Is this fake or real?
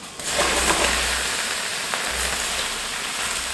real